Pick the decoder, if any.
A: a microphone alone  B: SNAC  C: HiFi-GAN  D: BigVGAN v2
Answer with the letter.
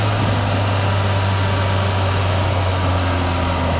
A